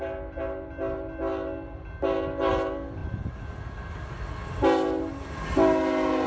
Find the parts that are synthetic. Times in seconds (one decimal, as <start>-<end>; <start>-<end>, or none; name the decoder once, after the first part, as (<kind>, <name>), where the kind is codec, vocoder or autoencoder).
none

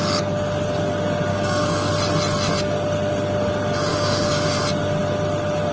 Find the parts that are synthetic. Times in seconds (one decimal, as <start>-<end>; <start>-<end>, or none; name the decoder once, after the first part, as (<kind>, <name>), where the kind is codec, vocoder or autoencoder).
1.3-1.9 (codec, DAC); 3.9-4.6

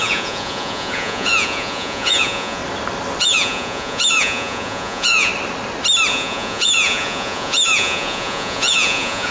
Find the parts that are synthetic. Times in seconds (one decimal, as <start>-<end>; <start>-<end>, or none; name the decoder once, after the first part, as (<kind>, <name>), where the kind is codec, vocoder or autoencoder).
0.0-2.6 (vocoder, Vocos); 3.2-5.3; 6.1-9.3

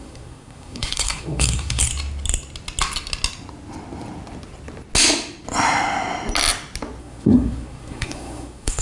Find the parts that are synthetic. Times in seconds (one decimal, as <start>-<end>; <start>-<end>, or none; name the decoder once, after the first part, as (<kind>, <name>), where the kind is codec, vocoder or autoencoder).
0.0-1.9 (codec, SNAC); 7.0-8.8

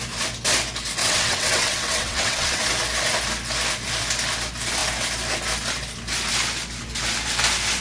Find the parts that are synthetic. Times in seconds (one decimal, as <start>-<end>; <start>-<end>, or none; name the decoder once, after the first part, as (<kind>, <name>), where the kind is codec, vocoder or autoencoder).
1.0-2.6 (vocoder, WaveNeXt)

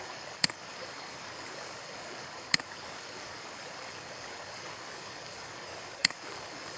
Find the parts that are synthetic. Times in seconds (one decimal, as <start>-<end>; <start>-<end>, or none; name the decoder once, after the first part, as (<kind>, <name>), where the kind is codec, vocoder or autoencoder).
0.0-6.8 (codec, DAC)

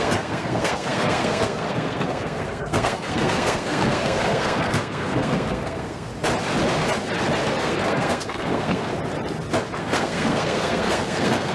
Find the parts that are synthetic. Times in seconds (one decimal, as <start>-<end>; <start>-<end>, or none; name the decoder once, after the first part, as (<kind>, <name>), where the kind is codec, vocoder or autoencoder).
0.0-6.1 (codec, SNAC); 7.6-8.9; 9.8-11.5

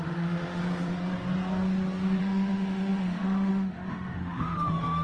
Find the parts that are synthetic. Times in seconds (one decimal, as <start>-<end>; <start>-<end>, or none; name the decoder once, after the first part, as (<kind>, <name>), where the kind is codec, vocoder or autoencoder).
0.0-0.6 (autoencoder, DAC-VAE); 2.2-5.0